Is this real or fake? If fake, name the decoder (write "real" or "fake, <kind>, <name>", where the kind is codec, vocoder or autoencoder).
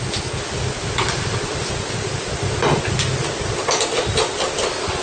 real